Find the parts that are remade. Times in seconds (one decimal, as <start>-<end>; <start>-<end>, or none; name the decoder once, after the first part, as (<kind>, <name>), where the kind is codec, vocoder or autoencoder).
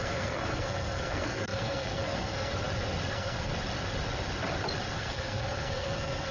0.0-2.5 (codec, SNAC); 3.1-3.5; 4.9-6.3